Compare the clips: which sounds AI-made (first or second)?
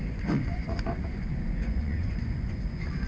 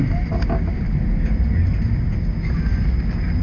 first